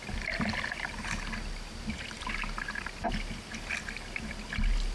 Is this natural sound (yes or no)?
yes